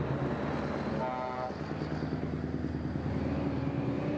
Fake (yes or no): no